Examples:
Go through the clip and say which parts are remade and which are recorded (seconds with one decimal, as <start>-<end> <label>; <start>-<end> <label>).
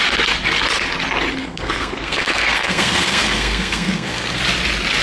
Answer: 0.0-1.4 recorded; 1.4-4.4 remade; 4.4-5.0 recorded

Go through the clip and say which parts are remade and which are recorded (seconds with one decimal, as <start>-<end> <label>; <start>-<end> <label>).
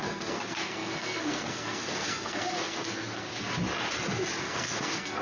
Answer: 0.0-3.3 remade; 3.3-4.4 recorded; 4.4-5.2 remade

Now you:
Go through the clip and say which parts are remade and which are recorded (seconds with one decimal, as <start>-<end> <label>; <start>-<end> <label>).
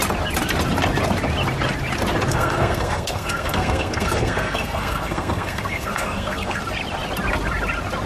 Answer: 0.0-2.3 recorded; 2.3-6.6 remade; 6.6-8.1 recorded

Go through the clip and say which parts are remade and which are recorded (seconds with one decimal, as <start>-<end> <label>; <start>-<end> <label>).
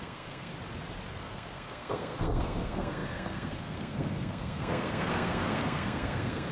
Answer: 0.0-0.5 remade; 0.5-1.2 recorded; 1.2-6.5 remade